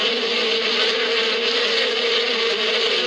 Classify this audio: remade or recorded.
recorded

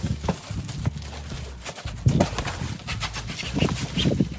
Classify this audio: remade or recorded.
recorded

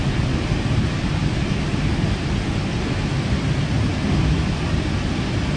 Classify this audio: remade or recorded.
remade